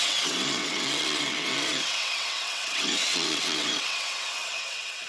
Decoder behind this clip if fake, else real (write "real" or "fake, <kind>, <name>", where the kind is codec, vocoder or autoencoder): fake, vocoder, WaveNeXt